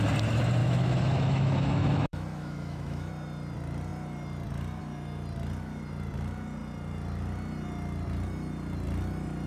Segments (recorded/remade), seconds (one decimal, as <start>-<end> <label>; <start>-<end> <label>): 0.0-0.6 recorded; 0.6-3.1 remade; 3.1-9.5 recorded